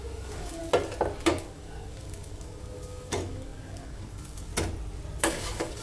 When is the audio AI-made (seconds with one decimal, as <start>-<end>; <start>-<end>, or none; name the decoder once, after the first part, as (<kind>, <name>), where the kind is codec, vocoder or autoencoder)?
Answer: 0.0-0.6 (codec, DAC); 1.3-4.5; 5.2-5.8